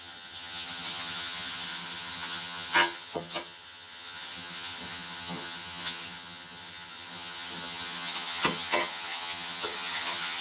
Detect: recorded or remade remade